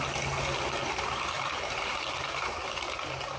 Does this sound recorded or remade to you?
recorded